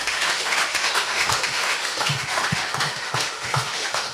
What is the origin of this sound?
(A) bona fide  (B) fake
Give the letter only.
B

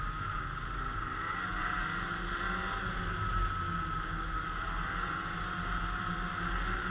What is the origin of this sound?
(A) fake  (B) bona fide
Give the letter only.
B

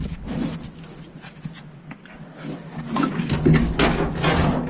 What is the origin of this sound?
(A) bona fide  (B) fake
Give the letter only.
A